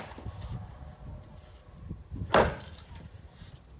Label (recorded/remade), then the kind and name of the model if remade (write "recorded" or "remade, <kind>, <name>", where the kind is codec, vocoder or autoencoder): recorded